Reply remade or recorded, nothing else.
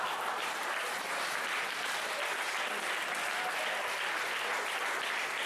recorded